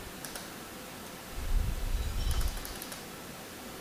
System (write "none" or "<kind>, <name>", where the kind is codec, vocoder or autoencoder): vocoder, BigVGAN v2